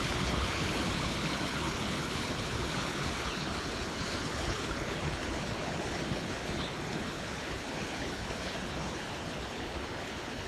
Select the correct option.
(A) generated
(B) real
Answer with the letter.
A